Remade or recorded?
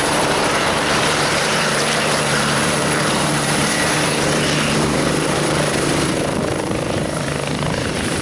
remade